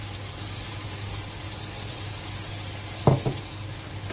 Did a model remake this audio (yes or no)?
no